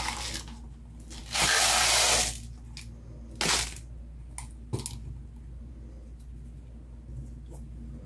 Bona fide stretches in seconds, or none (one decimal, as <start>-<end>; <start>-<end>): 0.0-8.1